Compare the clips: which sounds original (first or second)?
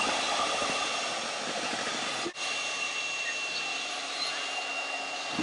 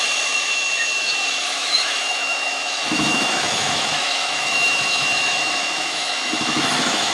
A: first